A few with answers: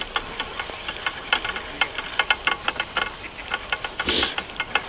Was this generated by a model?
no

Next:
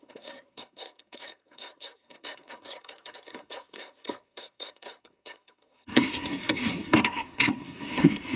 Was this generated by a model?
yes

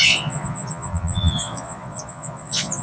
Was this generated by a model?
yes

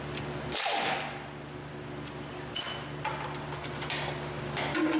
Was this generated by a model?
no